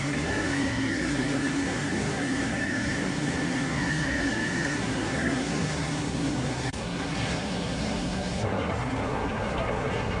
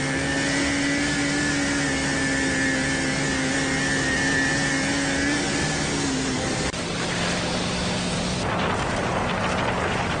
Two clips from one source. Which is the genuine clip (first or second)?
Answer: second